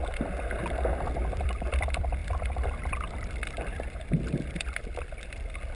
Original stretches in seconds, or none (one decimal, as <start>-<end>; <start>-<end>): 0.6-1.2